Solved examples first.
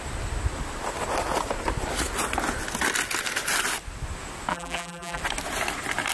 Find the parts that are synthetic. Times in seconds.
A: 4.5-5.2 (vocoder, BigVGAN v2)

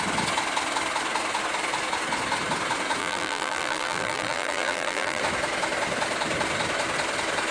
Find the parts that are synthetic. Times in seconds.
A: 3.0-5.2 (vocoder, BigVGAN v2)

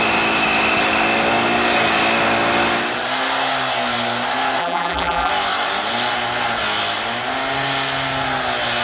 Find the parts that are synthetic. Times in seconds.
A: 4.6-5.3 (vocoder, BigVGAN v2)

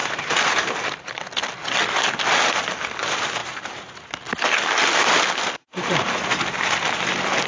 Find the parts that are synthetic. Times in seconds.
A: 0.0-1.2 (vocoder, BigVGAN v2); 3.4-4.1; 5.6-7.1

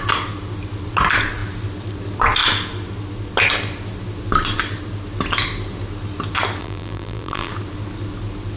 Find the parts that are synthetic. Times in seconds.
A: 6.6-7.5 (vocoder, BigVGAN v2)

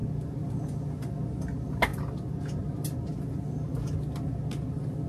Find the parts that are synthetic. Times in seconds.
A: none

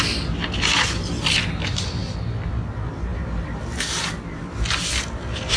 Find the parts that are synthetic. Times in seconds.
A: 3.1-3.6 (vocoder, BigVGAN v2)